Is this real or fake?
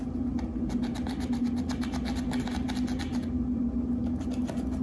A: real